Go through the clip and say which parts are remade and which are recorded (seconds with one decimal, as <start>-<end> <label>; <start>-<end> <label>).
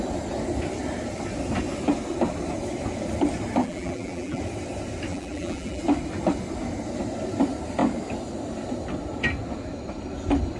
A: 0.0-3.6 recorded; 3.6-4.4 remade; 4.4-5.1 recorded; 5.1-5.8 remade; 5.8-10.6 recorded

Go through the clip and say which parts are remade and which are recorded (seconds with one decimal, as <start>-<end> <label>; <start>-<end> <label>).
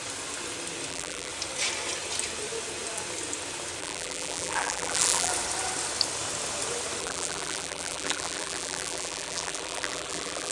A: 0.0-0.9 recorded; 0.9-1.3 remade; 1.3-3.8 recorded; 3.8-5.3 remade; 5.3-7.0 recorded; 7.0-10.5 remade